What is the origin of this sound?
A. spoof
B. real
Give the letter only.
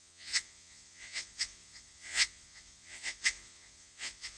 A